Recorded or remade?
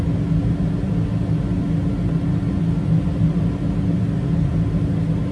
recorded